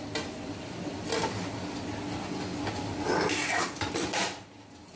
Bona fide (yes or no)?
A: yes